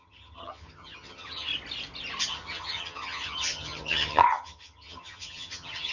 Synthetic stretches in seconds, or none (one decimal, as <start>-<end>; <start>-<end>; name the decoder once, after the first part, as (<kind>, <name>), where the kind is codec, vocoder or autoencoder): 0.0-1.5 (vocoder, HiFi-GAN); 2.3-5.9